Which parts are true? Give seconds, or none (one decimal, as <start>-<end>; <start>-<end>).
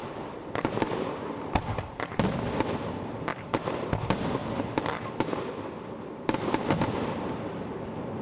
2.0-3.3; 4.0-8.2